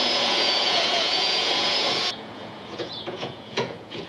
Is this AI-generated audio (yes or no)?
yes